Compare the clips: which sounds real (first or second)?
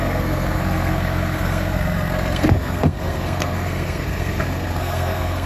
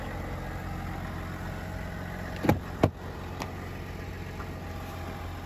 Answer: second